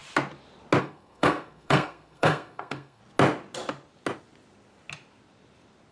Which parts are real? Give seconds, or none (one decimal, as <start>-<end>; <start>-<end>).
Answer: 0.0-0.8; 3.0-5.9